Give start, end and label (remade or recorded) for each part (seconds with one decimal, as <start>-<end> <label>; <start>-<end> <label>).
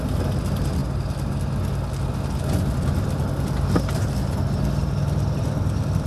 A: 0.0-6.1 recorded